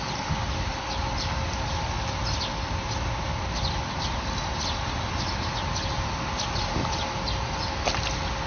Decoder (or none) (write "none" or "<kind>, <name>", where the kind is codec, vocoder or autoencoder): none